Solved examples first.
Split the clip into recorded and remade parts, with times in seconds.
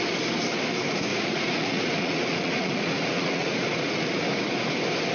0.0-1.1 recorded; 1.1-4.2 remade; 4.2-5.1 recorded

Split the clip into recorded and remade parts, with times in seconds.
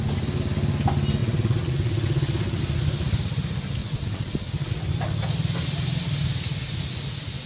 0.0-1.2 recorded; 1.2-2.6 remade; 2.6-3.8 recorded; 3.8-4.7 remade; 4.7-7.5 recorded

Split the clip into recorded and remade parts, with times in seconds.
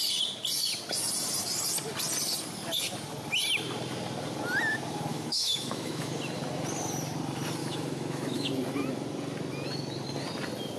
0.0-5.1 recorded; 5.1-6.1 remade; 6.1-7.6 recorded; 7.6-8.5 remade; 8.5-10.8 recorded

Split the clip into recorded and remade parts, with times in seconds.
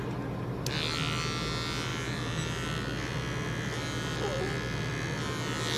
0.0-5.8 recorded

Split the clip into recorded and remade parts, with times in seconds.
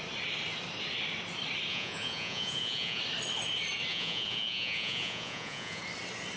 0.0-1.7 recorded; 1.7-3.0 remade; 3.0-3.9 recorded; 3.9-5.8 remade; 5.8-6.4 recorded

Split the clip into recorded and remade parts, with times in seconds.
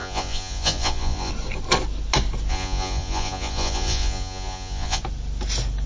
0.0-1.3 remade; 1.3-2.5 recorded; 2.5-5.0 remade; 5.0-5.9 recorded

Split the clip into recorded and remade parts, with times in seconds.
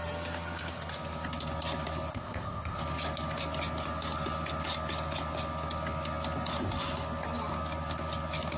0.0-2.1 recorded; 2.1-2.8 remade; 2.8-8.6 recorded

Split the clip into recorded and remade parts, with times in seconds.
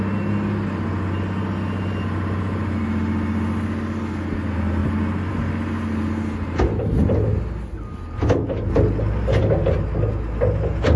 0.0-11.0 recorded